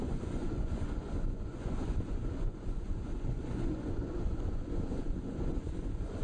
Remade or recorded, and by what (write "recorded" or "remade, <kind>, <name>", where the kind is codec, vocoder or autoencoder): remade, vocoder, Vocos